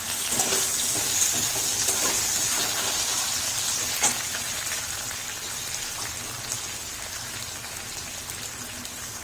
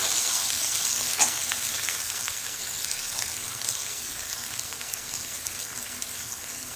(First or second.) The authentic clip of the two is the first